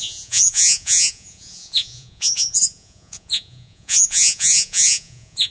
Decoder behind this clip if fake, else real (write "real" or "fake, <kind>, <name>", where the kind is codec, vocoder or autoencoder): fake, vocoder, Vocos